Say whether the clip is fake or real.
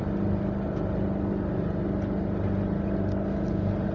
real